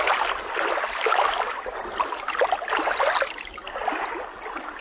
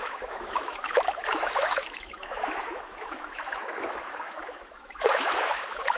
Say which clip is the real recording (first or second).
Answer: first